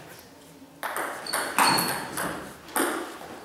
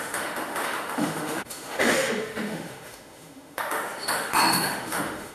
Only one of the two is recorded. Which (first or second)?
first